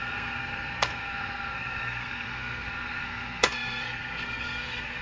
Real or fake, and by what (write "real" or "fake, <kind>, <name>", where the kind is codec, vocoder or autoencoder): fake, codec, SNAC